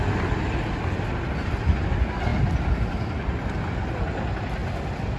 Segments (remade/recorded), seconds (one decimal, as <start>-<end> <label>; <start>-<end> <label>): 0.0-5.2 recorded